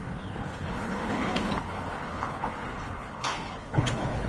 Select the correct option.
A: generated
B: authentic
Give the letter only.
A